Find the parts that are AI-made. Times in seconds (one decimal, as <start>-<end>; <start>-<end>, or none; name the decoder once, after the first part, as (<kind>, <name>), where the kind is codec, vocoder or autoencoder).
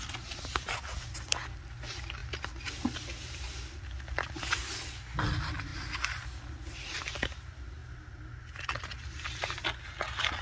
none